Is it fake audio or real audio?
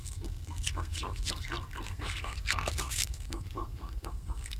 fake